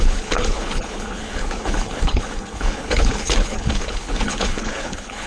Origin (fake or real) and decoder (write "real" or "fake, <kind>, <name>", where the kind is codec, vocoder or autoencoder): fake, codec, HILCodec